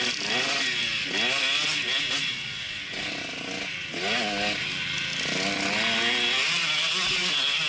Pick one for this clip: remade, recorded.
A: recorded